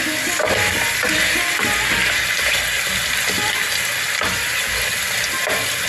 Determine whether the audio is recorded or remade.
recorded